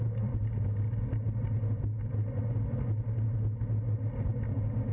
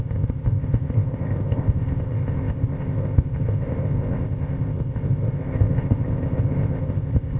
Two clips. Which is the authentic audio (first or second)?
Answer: first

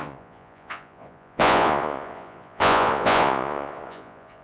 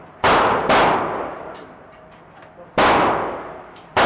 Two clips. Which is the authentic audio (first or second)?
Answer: second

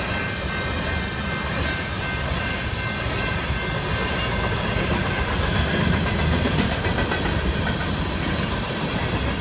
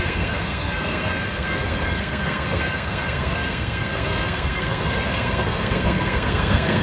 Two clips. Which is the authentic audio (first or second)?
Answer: first